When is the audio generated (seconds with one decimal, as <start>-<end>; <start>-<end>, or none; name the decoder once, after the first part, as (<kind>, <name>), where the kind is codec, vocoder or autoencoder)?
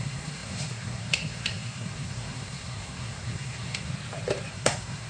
0.0-3.9 (codec, SNAC); 4.5-5.1